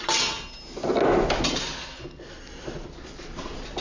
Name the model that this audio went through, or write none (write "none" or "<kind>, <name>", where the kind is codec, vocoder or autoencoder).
none